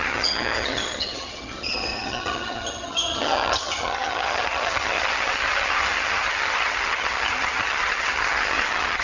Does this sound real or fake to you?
fake